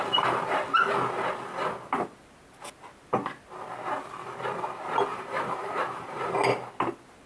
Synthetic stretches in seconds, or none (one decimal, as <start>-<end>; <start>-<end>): 5.1-6.3